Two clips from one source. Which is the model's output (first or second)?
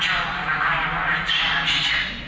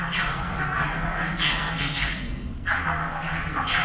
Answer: second